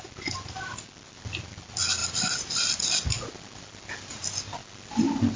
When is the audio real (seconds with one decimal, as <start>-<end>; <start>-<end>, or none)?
0.0-5.4